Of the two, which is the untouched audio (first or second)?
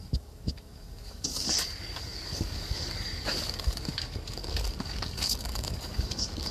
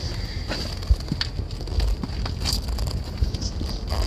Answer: second